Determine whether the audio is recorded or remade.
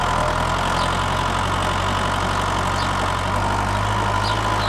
recorded